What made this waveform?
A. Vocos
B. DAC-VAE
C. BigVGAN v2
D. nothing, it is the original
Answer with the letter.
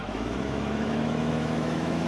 B